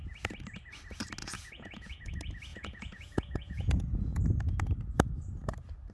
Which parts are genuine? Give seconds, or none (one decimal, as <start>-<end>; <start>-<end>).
0.0-1.2; 2.1-2.5; 4.2-5.9